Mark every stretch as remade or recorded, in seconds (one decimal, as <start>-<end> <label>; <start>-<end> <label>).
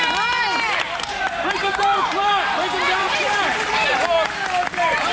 0.0-1.6 recorded; 1.6-2.3 remade; 2.3-3.0 recorded; 3.0-3.7 remade; 3.7-5.1 recorded